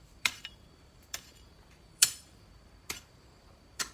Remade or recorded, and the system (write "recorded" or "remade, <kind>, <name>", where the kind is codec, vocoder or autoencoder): remade, vocoder, BigVGAN v2